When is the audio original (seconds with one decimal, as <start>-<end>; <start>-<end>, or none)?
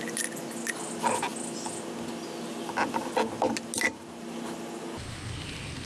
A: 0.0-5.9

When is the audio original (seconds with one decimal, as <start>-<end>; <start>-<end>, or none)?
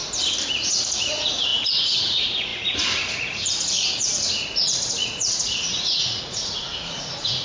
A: 0.0-0.7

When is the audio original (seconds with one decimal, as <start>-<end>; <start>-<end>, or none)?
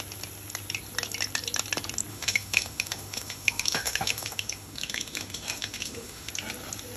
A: 0.0-2.1; 6.3-7.0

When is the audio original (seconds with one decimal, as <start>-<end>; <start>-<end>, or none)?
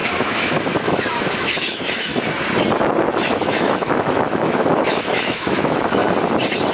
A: 2.1-3.1; 6.0-6.7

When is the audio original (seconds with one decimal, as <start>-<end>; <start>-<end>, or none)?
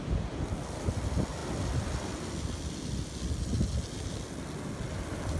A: 0.0-5.4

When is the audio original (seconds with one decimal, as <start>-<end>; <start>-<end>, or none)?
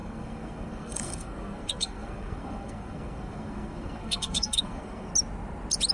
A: 5.1-5.9